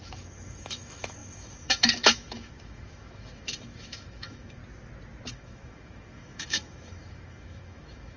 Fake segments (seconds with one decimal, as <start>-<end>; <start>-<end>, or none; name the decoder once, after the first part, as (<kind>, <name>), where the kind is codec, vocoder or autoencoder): 0.0-4.6 (autoencoder, DAC-VAE); 5.3-8.2